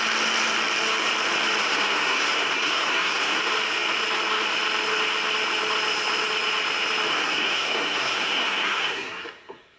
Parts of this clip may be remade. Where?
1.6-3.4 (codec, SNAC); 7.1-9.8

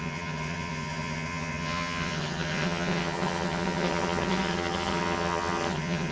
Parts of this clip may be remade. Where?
0.0-6.1 (vocoder, HiFi-GAN)

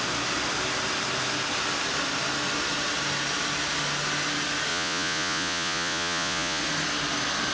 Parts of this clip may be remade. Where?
4.7-6.6 (vocoder, Vocos)